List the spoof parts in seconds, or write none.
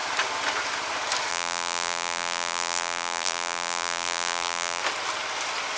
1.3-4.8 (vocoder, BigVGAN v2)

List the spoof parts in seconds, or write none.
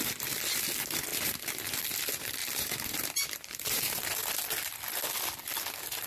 1.1-1.7 (vocoder, BigVGAN v2); 2.4-4.4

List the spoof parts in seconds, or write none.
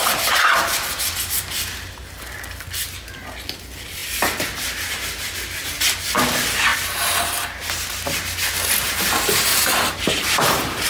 6.7-7.6 (vocoder, BigVGAN v2); 9.5-10.9